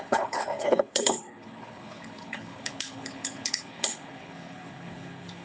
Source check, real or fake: fake